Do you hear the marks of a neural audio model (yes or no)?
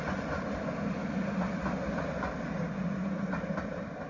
no